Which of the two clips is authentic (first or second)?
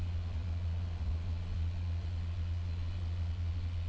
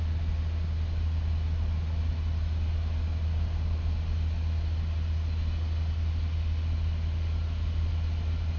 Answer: second